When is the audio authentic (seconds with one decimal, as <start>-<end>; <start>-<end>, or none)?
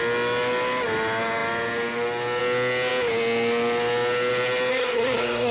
0.0-4.7